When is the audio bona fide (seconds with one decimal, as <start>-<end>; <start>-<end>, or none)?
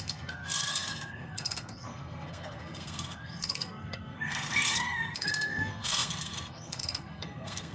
none